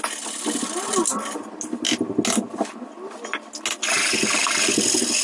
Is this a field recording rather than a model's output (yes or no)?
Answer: yes